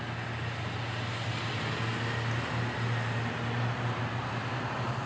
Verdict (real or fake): real